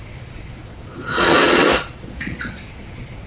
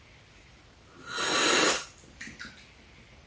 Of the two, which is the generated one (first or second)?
first